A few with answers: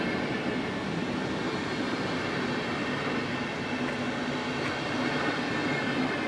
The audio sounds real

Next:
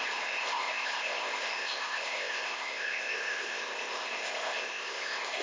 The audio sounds fake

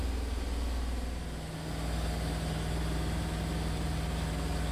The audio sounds real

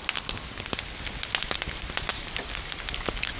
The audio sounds real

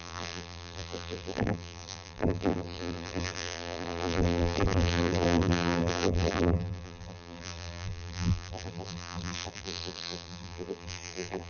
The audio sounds fake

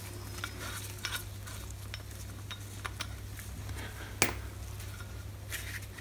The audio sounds real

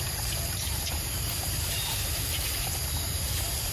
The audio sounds fake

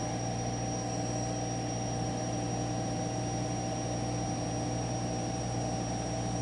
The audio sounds real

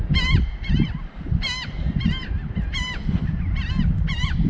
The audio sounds fake